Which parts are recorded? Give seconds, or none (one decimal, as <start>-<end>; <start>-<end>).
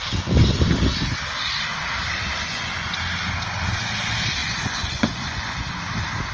0.0-2.2; 2.9-4.4; 5.8-6.3